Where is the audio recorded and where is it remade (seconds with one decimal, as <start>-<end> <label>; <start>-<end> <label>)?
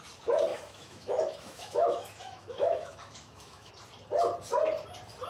0.0-0.5 recorded; 0.5-3.7 remade; 3.7-5.3 recorded